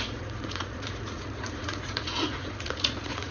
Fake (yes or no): yes